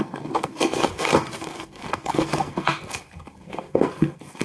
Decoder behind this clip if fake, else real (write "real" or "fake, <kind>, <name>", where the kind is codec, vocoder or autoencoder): fake, codec, SNAC